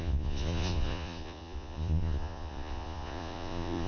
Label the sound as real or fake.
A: fake